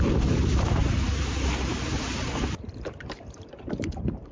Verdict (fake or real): fake